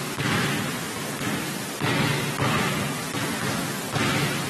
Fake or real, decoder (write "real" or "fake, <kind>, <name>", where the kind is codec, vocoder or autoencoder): real